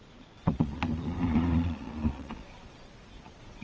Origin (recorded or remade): remade